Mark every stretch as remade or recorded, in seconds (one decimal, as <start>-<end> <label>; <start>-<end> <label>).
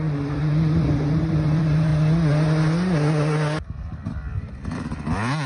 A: 0.0-1.9 remade; 1.9-5.5 recorded